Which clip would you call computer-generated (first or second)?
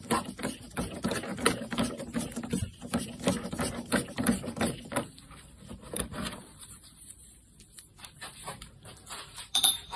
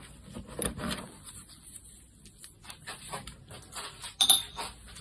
first